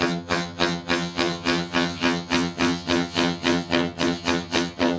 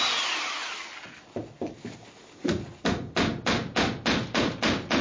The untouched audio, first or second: second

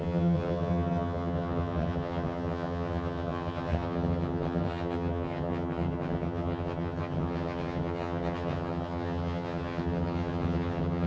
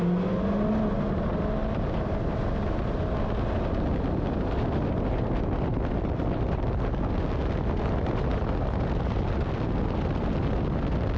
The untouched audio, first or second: second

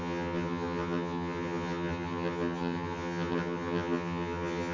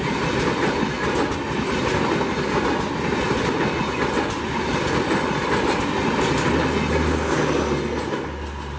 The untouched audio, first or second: second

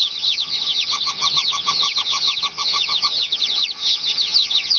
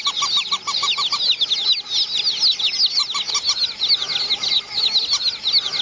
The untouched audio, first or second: second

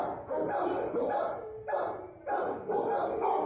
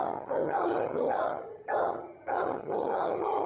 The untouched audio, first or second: first